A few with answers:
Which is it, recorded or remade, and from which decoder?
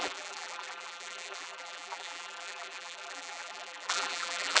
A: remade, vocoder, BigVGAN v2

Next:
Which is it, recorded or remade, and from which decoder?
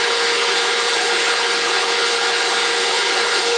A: remade, codec, HILCodec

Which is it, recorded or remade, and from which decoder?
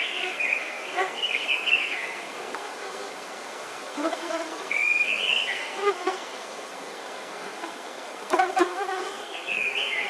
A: remade, codec, SNAC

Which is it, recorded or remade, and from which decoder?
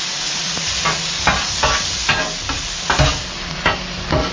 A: recorded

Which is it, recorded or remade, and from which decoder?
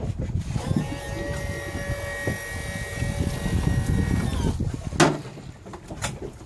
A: recorded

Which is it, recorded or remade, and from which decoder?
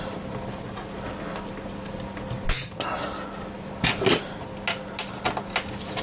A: recorded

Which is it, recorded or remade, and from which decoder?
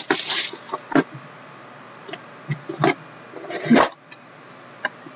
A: recorded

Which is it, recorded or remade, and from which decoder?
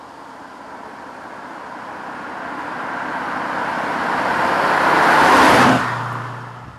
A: recorded